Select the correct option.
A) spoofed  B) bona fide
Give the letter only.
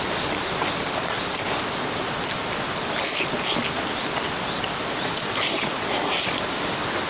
B